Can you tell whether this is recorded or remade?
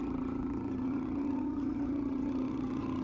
remade